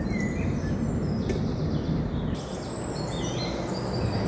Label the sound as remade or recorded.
recorded